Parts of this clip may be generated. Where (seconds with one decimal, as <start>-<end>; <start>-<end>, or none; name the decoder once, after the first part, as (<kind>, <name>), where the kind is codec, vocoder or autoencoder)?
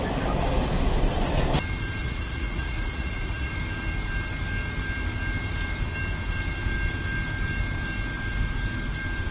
2.0-3.5 (vocoder, Vocos)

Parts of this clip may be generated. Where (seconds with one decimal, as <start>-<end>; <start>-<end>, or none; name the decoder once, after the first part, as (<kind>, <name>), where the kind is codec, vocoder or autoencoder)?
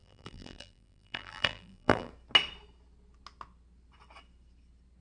0.0-2.1 (vocoder, BigVGAN v2)